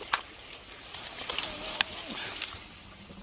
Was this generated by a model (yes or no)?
yes